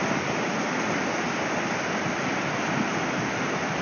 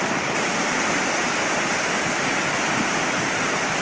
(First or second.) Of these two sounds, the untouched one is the first